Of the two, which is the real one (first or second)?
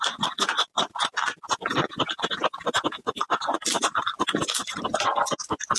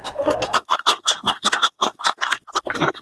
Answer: first